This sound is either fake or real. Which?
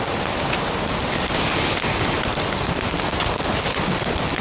real